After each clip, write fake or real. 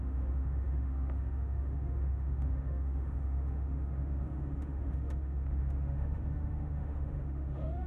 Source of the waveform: fake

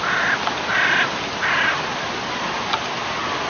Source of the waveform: real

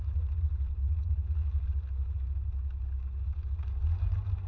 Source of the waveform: real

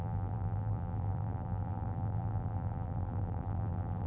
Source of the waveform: fake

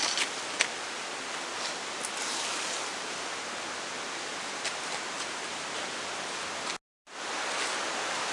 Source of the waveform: real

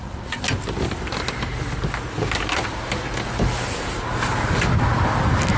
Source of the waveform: real